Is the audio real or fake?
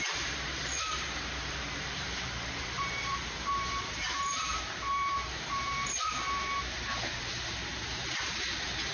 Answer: fake